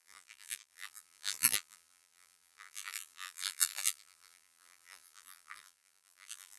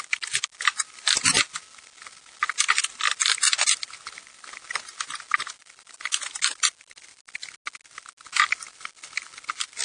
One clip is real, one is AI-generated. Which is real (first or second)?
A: second